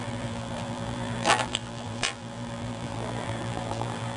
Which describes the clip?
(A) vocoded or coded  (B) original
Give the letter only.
A